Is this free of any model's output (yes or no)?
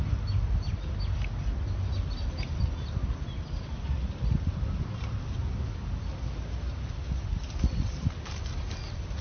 yes